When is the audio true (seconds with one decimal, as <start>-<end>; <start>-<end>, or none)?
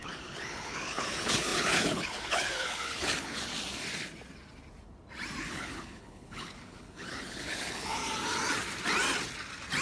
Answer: 3.5-5.4; 8.0-9.8